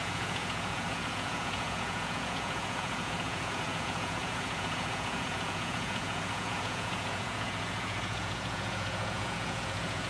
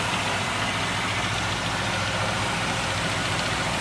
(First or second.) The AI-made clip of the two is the first